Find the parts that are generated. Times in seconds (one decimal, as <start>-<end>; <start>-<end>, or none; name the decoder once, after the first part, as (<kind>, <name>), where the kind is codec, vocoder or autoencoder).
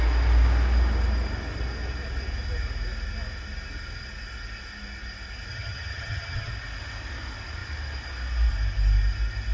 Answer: 5.5-6.5 (vocoder, HiFi-GAN)